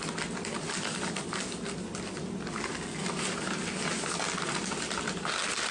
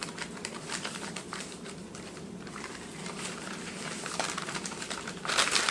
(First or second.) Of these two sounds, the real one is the first